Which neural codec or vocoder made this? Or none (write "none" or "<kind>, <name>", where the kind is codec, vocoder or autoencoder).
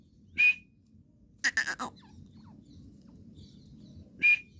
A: none